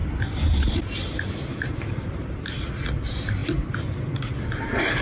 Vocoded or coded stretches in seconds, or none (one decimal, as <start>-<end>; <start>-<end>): 0.5-5.0